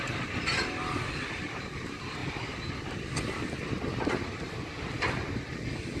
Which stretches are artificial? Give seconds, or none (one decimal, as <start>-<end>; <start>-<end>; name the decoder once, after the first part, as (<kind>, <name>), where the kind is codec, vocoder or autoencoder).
none